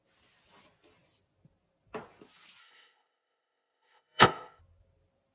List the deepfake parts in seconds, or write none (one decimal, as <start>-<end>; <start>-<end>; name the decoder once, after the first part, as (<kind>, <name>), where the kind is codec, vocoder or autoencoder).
2.6-4.6 (codec, ZipCodec)